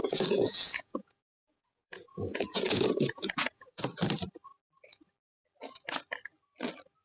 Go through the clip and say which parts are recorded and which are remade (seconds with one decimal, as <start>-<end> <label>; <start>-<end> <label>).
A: 0.0-3.8 remade; 3.8-7.0 recorded